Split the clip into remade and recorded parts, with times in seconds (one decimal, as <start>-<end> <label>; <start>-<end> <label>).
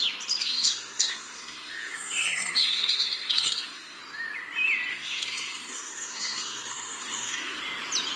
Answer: 0.0-0.4 recorded; 0.4-4.0 remade; 4.0-4.9 recorded; 4.9-7.6 remade; 7.6-8.2 recorded